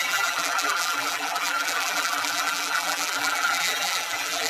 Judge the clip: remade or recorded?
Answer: remade